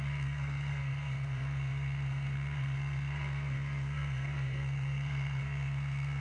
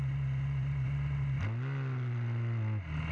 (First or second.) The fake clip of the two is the first